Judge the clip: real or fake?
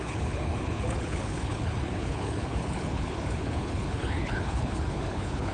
fake